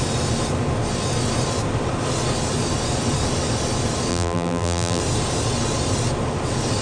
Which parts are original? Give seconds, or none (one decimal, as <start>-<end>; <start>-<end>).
0.0-4.1; 5.0-6.8